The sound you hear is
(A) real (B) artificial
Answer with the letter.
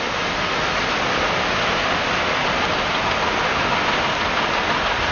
A